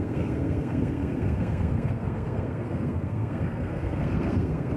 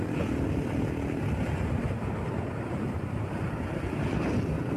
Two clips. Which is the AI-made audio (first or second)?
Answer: first